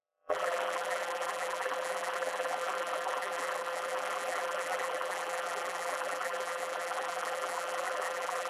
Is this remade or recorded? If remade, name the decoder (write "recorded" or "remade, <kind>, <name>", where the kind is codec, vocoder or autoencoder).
remade, vocoder, BigVGAN v2